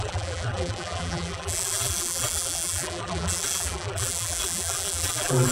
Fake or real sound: fake